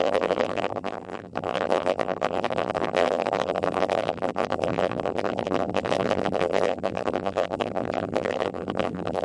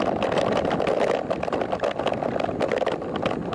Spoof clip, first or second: first